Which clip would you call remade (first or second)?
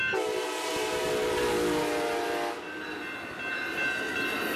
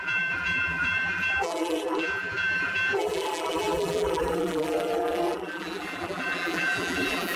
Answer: second